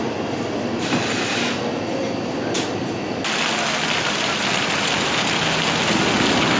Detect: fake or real real